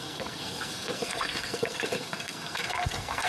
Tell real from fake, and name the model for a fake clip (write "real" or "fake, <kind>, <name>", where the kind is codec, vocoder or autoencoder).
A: fake, codec, SNAC